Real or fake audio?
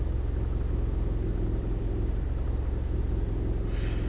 real